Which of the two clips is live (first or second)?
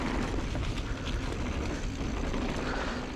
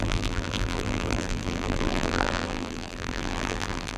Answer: first